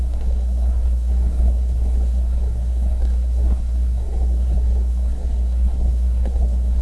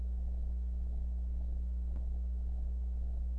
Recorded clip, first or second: second